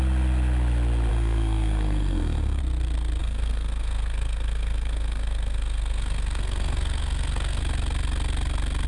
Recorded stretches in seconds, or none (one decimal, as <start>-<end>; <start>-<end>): 0.0-1.1; 2.6-3.2; 7.6-8.9